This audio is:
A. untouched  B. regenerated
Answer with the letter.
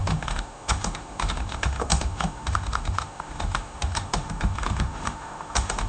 B